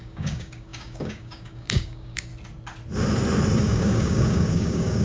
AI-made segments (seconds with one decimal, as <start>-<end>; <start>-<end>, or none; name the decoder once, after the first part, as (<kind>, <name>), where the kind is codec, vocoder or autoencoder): 0.0-2.3 (codec, DAC); 3.6-5.0